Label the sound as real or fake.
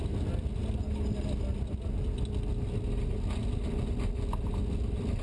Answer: real